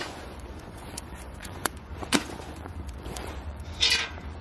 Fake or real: fake